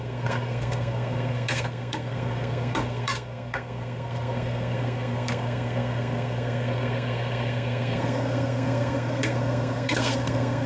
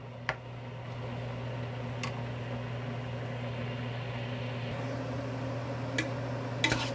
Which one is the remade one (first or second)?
first